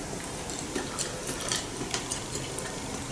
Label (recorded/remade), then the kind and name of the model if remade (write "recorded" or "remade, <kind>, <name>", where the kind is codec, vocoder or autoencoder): remade, vocoder, BigVGAN v2